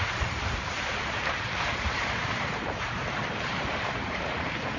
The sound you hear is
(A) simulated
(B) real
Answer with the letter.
A